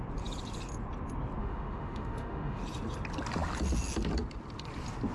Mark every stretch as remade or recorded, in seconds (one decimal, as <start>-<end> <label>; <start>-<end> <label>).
0.0-1.4 recorded; 1.4-2.6 remade; 2.6-5.1 recorded